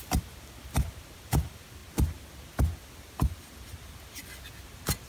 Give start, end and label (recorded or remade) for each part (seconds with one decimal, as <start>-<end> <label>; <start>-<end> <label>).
0.0-5.1 recorded